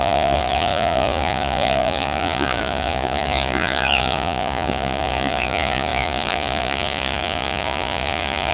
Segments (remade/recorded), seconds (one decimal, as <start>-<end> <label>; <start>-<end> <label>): 0.0-8.5 remade

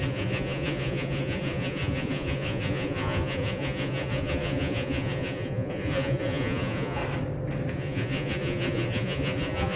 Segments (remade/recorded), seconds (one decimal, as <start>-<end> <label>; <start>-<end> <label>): 0.0-7.0 remade; 7.0-7.7 recorded; 7.7-9.8 remade

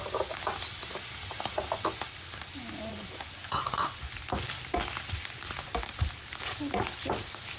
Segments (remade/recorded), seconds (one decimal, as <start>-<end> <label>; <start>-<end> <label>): 0.0-2.9 recorded; 2.9-4.0 remade; 4.0-7.6 recorded

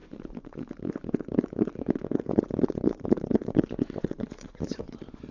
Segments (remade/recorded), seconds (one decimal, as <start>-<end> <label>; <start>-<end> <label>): 0.0-5.3 remade

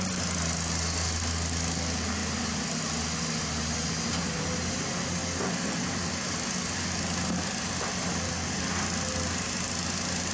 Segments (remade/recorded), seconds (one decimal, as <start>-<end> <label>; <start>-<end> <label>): 0.0-10.3 recorded

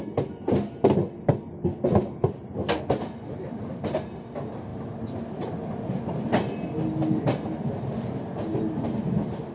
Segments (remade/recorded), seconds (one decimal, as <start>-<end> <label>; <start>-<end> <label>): 0.0-9.5 recorded

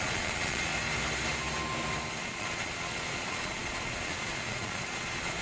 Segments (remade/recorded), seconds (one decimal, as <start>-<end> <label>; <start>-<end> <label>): 0.0-0.7 remade; 0.7-2.2 recorded; 2.2-5.4 remade

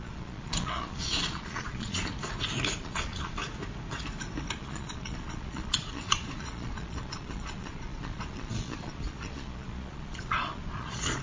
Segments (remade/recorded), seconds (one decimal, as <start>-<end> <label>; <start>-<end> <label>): 0.0-2.1 remade; 2.1-2.8 recorded; 2.8-3.4 remade; 3.4-4.5 recorded; 4.5-11.2 remade